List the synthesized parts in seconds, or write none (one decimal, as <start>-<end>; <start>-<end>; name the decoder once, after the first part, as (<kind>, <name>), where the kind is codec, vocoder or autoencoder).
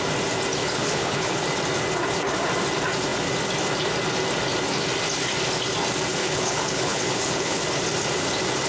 0.6-1.4 (codec, HILCodec); 6.2-7.6